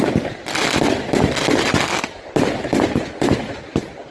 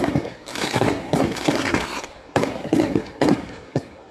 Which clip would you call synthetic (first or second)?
second